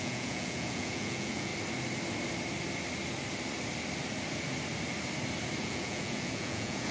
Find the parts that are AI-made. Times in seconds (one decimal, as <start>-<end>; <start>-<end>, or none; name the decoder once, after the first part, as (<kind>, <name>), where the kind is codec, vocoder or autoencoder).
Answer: 0.0-1.5 (vocoder, Vocos); 5.6-6.9